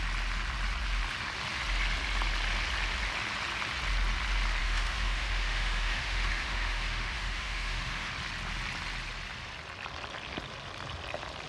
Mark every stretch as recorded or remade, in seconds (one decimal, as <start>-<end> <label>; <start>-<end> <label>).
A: 0.0-4.6 recorded; 4.6-8.1 remade; 8.1-11.5 recorded